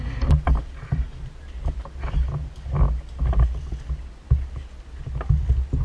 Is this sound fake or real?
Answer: real